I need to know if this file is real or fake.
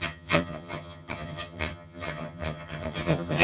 fake